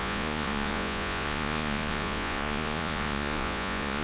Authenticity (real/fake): fake